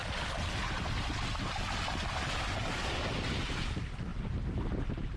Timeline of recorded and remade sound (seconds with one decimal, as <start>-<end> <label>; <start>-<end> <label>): 0.0-5.2 recorded